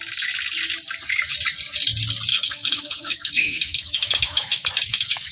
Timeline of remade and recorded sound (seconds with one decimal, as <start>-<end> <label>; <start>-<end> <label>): 0.0-2.3 recorded; 2.3-5.3 remade